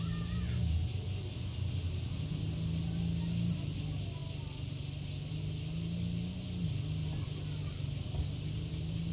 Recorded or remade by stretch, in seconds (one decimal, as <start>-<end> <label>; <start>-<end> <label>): 0.0-9.1 recorded